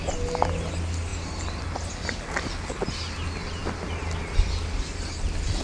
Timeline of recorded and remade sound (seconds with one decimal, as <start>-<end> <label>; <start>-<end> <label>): 0.0-5.6 recorded

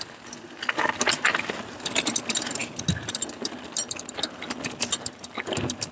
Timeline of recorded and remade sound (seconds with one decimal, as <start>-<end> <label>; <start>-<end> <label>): 0.0-5.9 recorded

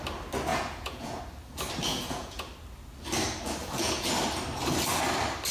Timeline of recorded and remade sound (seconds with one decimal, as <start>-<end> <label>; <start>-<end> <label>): 0.0-0.5 recorded; 0.5-1.2 remade; 1.2-1.9 recorded; 1.9-2.5 remade; 2.5-3.6 recorded; 3.6-4.1 remade; 4.1-5.5 recorded

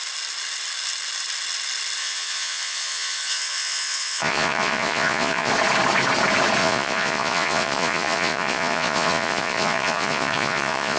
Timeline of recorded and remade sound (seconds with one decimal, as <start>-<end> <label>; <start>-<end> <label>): 0.0-2.0 recorded; 2.0-5.5 remade; 5.5-6.6 recorded; 6.6-11.0 remade

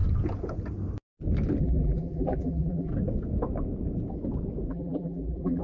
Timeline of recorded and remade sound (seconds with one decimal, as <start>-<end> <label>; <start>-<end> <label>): 0.0-1.6 recorded; 1.6-2.9 remade; 2.9-4.7 recorded; 4.7-5.6 remade